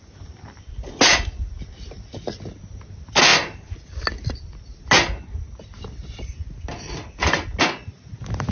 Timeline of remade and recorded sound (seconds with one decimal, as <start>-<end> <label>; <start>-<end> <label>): 0.0-8.5 recorded